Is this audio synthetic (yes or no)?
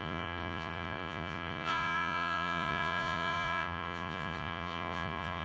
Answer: yes